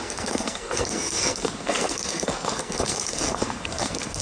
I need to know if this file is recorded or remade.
remade